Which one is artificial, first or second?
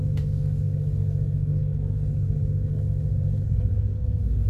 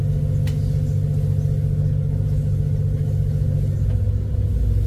first